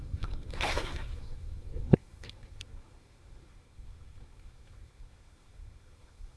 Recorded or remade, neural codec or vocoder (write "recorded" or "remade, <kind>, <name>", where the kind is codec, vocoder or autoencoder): remade, codec, SNAC